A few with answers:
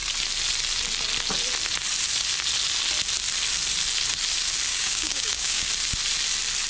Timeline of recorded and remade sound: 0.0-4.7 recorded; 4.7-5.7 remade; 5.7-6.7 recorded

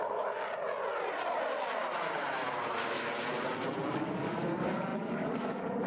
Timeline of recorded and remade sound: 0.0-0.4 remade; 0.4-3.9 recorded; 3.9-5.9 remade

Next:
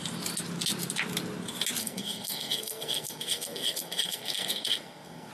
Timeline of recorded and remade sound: 0.0-1.8 recorded; 1.8-5.3 remade